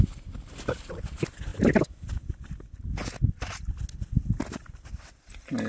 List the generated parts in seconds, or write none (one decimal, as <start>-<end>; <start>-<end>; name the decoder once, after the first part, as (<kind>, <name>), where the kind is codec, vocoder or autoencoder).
none